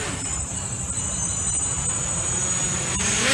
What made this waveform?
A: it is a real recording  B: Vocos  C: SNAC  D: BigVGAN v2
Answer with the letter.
D